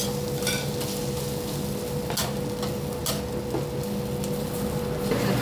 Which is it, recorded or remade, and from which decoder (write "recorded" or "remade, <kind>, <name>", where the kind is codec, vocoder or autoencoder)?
recorded